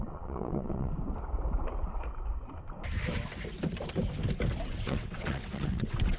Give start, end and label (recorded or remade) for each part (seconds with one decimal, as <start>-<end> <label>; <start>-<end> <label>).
0.0-0.9 remade; 0.9-4.6 recorded; 4.6-6.2 remade